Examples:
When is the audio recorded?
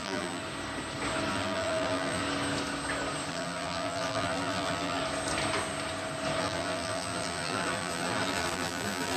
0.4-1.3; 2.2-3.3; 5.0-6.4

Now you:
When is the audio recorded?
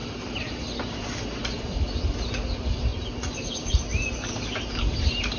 1.4-2.9; 4.3-5.4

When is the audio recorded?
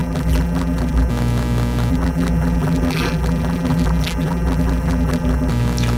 1.1-1.9; 5.5-6.0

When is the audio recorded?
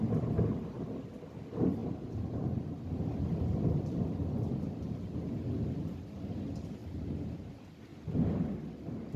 0.0-6.8; 7.5-7.9; 8.6-9.2